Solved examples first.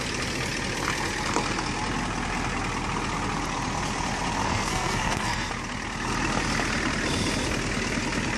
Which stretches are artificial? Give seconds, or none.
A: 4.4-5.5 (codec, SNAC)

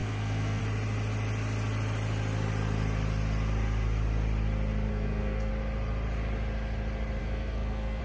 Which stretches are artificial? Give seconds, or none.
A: 0.0-0.6 (codec, SNAC); 4.9-5.5; 7.2-8.0